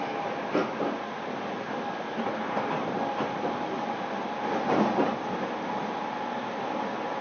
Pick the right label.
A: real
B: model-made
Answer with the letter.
A